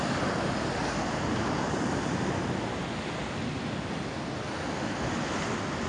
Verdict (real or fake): real